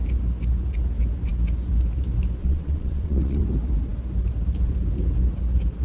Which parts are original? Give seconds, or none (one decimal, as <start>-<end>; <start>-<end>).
0.0-2.4; 3.4-5.8